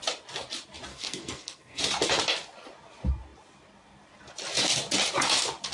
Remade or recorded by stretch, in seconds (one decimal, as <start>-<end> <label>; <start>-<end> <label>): 0.0-0.9 recorded; 0.9-1.8 remade; 1.8-5.7 recorded